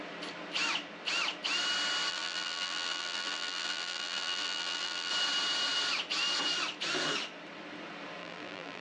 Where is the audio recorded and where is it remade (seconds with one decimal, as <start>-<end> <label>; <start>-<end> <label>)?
0.0-2.1 recorded; 2.1-5.1 remade; 5.1-8.2 recorded; 8.2-8.8 remade

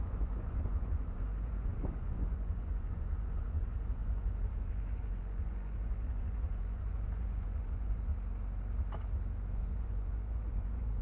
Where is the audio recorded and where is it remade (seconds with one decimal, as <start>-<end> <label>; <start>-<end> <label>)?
0.0-8.1 remade; 8.1-9.5 recorded; 9.5-11.0 remade

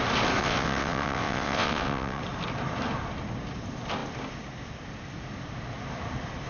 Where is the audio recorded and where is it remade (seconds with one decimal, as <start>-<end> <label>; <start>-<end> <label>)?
0.0-0.4 recorded; 0.4-2.2 remade; 2.2-6.5 recorded

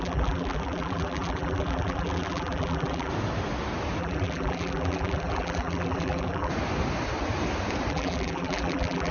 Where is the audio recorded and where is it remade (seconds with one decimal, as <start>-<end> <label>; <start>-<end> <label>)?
0.0-3.1 remade; 3.1-4.0 recorded; 4.0-6.5 remade; 6.5-7.9 recorded; 7.9-9.1 remade

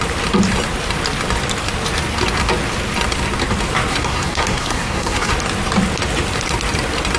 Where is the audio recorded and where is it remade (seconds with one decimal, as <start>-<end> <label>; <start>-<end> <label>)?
0.0-3.9 recorded; 3.9-5.3 remade; 5.3-7.2 recorded

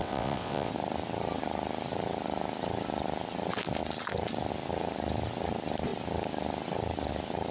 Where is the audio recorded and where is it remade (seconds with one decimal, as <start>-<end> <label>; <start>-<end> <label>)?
0.0-0.7 remade; 0.7-7.5 recorded

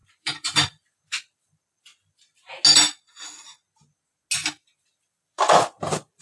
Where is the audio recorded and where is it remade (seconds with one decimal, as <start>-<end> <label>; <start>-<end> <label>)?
0.0-2.5 remade; 2.5-4.4 recorded; 4.4-6.2 remade

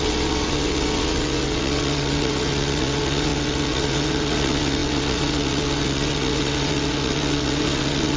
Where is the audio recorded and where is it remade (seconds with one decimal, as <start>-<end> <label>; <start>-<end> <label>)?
0.0-8.2 remade